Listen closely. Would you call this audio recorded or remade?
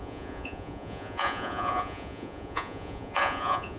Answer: remade